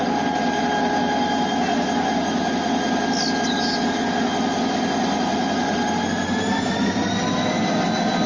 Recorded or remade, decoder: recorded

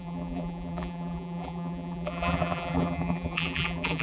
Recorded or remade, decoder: remade, vocoder, BigVGAN v2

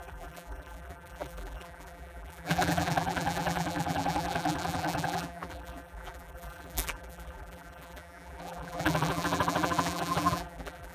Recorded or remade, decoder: remade, vocoder, BigVGAN v2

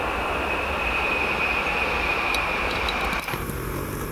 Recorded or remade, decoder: remade, vocoder, BigVGAN v2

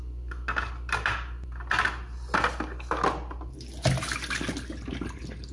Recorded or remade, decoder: recorded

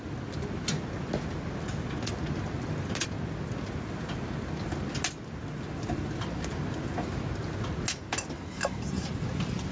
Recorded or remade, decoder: recorded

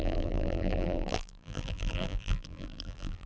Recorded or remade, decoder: remade, vocoder, BigVGAN v2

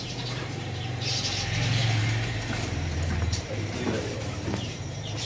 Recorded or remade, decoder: remade, vocoder, BigVGAN v2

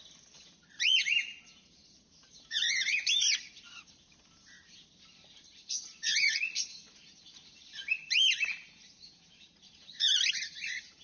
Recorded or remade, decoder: remade, vocoder, BigVGAN v2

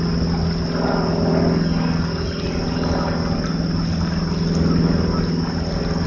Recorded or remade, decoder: recorded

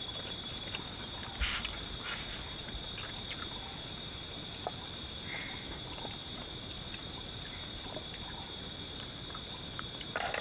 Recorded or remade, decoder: recorded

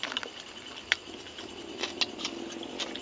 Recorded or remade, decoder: recorded